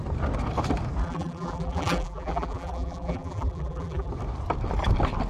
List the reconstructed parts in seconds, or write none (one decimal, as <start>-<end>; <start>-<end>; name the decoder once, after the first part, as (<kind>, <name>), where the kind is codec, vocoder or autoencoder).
1.0-4.1 (vocoder, BigVGAN v2)